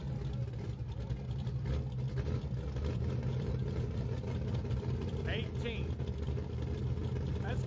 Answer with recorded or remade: recorded